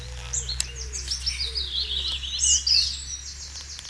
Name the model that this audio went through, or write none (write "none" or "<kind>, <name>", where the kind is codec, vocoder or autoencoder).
none